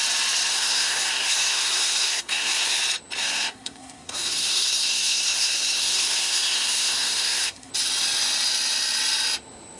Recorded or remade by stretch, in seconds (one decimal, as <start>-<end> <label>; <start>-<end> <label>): 0.0-0.5 recorded; 0.5-2.8 remade; 2.8-3.2 recorded; 3.2-7.7 remade; 7.7-9.8 recorded